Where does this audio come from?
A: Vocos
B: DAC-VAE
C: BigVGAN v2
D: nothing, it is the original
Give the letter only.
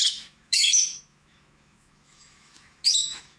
B